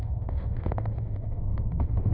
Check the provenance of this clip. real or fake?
fake